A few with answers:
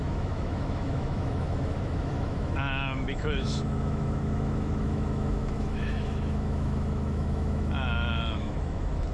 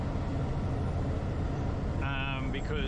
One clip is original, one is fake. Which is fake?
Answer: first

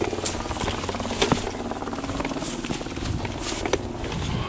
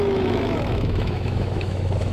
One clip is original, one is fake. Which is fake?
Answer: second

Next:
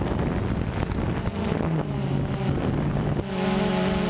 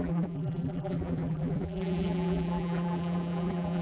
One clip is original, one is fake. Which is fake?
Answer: second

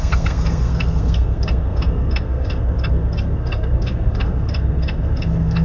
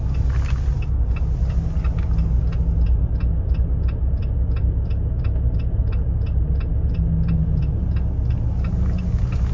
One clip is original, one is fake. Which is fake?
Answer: first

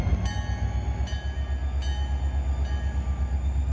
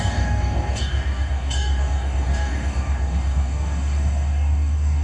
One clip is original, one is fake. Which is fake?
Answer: second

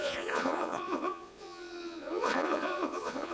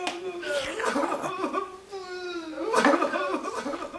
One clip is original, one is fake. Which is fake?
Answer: first